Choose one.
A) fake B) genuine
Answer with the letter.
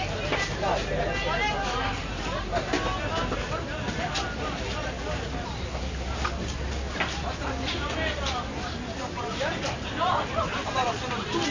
B